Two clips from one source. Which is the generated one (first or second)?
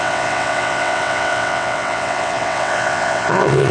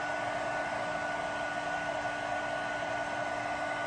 first